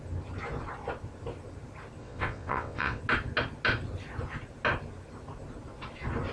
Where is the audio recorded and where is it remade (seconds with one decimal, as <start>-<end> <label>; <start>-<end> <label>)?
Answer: 0.0-2.0 recorded; 2.0-3.0 remade; 3.0-6.3 recorded